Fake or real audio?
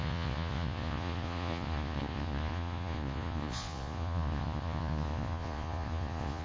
fake